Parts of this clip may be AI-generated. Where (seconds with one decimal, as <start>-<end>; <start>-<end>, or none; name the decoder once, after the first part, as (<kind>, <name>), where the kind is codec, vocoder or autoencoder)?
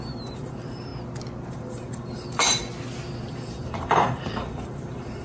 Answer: 0.0-0.9 (vocoder, BigVGAN v2); 1.5-2.6; 3.3-5.2